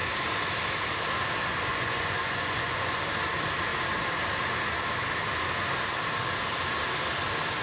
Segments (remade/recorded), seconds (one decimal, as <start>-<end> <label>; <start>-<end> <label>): 0.0-1.7 recorded; 1.7-3.0 remade; 3.0-7.6 recorded